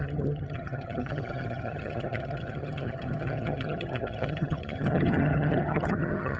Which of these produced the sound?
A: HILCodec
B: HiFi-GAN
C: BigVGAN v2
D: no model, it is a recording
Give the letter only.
B